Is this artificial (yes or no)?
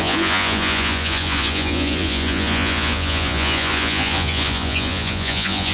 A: yes